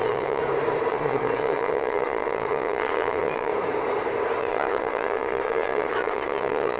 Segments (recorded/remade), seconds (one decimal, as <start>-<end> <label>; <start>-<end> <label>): 0.0-0.4 remade; 0.4-0.9 recorded; 0.9-3.5 remade; 3.5-4.4 recorded; 4.4-6.8 remade